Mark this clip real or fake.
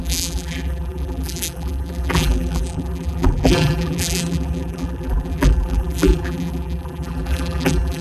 fake